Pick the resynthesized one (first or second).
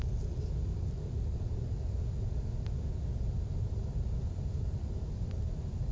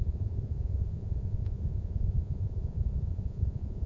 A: second